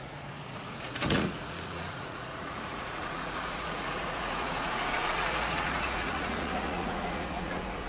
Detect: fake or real fake